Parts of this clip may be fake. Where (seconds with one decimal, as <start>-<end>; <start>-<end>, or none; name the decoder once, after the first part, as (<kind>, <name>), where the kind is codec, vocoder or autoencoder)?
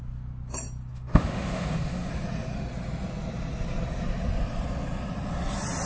0.9-2.1 (autoencoder, DAC-VAE)